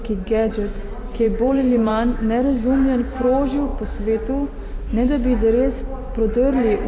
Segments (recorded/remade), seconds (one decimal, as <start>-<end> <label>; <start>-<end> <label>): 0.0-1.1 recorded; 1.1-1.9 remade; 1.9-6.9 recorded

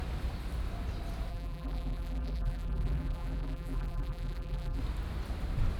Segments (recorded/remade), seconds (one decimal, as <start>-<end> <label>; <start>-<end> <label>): 0.0-1.3 recorded; 1.3-4.8 remade; 4.8-5.8 recorded

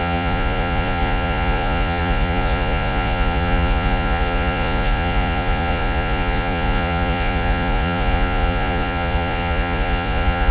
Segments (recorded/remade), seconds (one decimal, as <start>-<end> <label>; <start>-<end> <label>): 0.0-10.5 remade